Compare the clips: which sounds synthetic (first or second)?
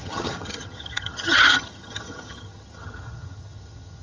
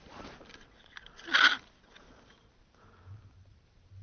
first